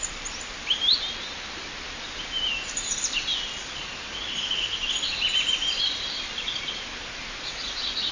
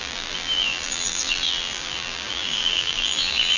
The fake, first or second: second